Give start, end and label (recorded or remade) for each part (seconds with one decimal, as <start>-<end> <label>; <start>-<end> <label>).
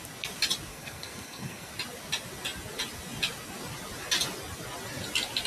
0.0-0.7 recorded; 0.7-1.7 remade; 1.7-5.5 recorded